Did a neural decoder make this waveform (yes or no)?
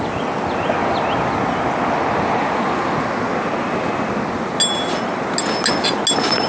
no